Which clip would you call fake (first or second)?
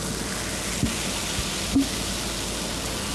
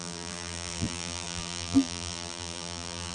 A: second